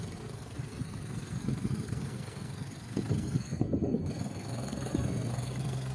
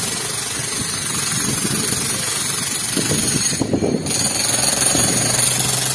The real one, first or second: second